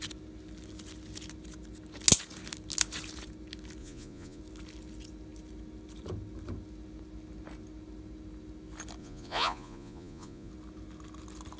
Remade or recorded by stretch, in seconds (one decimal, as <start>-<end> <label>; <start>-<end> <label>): 0.0-3.8 recorded; 3.8-4.4 remade; 4.4-9.0 recorded; 9.0-10.5 remade; 10.5-11.6 recorded